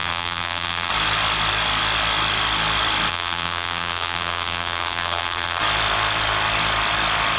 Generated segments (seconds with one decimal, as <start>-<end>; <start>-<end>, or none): 0.0-0.9; 3.1-5.6